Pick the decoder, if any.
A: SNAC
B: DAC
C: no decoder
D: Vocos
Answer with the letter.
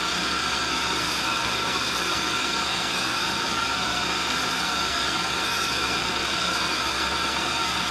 A